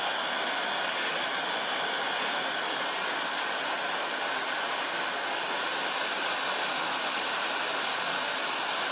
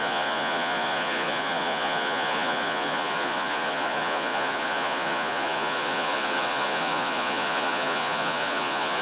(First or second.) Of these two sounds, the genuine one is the first